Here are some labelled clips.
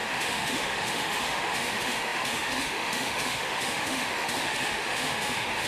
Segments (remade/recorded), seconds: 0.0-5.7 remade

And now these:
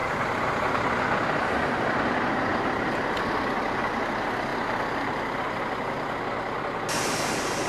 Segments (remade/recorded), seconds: 0.0-7.7 recorded

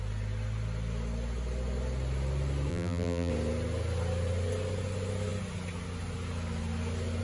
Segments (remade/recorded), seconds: 0.0-2.7 recorded; 2.7-3.3 remade; 3.3-7.2 recorded

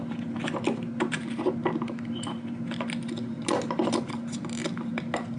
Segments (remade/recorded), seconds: 0.0-5.4 recorded